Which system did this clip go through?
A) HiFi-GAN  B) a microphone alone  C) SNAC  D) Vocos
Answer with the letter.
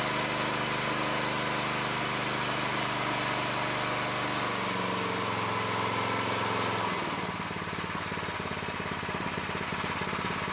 B